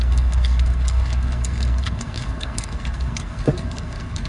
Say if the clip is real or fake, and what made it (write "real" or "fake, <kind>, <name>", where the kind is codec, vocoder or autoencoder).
fake, codec, SNAC